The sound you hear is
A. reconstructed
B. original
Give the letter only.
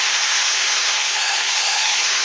A